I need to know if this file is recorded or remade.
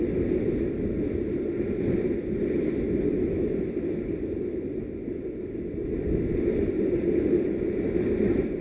recorded